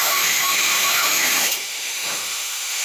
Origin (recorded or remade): remade